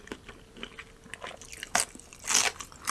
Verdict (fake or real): real